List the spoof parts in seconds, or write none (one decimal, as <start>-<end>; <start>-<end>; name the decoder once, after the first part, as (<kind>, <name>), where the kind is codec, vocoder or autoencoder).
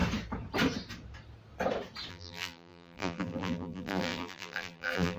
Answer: 2.1-5.2 (vocoder, BigVGAN v2)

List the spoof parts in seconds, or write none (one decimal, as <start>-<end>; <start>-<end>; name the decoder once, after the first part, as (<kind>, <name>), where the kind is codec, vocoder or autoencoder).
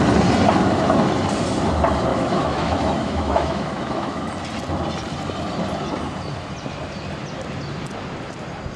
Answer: 2.1-4.3 (autoencoder, DAC-VAE)